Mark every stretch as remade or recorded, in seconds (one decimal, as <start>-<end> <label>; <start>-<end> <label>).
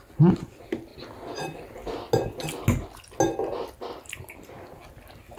0.0-5.4 recorded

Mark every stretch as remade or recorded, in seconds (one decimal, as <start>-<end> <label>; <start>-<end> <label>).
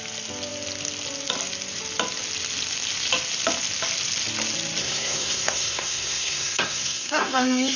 0.0-4.8 recorded; 4.8-7.8 remade